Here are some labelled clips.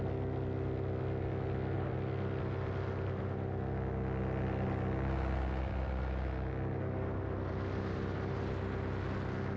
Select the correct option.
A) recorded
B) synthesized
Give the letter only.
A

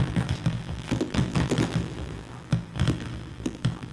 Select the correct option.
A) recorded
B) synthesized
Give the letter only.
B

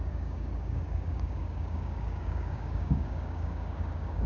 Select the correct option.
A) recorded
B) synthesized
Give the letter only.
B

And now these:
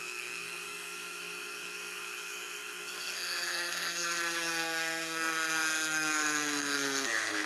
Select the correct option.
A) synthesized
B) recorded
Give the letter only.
A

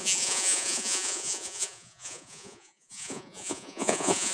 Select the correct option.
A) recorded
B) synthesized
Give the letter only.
B